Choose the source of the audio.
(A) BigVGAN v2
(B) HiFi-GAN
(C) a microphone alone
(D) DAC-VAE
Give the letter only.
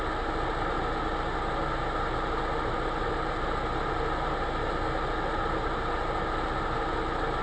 C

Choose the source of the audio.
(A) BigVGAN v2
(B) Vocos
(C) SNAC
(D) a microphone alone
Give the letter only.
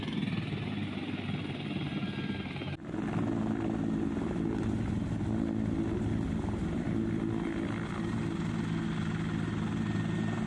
D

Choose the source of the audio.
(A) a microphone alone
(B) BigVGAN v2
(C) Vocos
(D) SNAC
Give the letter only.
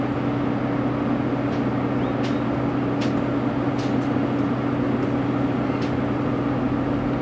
A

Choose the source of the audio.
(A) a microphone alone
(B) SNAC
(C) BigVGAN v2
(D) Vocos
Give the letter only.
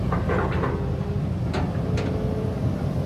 C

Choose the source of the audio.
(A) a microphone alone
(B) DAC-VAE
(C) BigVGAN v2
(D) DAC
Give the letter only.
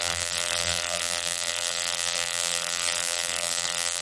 C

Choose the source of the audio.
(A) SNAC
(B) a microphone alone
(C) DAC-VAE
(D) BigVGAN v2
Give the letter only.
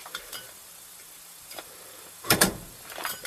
D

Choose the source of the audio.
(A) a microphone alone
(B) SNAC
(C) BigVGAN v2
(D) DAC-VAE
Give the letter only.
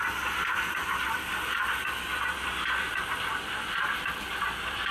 C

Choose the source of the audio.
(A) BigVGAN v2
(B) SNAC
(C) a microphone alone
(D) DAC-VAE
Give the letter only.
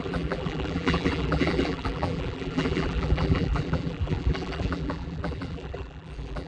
A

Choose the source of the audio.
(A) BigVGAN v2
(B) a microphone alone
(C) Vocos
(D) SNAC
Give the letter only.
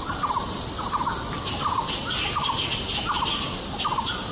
B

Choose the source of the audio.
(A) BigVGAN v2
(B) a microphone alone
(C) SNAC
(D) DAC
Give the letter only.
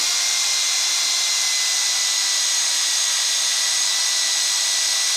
B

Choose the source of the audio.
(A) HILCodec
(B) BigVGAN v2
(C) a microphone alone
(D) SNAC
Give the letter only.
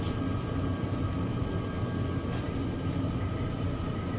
C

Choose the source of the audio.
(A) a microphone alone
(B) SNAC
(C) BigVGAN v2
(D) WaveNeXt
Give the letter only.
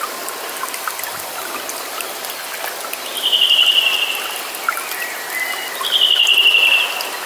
A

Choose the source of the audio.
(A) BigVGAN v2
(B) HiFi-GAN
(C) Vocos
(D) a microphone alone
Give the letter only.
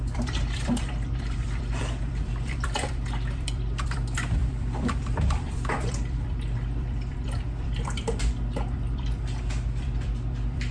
A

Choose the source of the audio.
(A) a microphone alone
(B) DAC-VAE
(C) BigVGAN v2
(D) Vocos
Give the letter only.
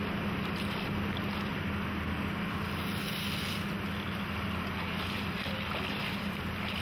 A